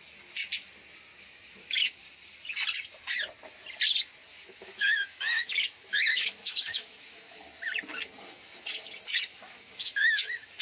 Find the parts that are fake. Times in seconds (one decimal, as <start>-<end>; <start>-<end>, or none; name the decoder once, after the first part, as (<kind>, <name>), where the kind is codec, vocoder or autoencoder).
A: 1.1-2.0 (autoencoder, DAC-VAE); 4.3-7.4; 9.3-10.6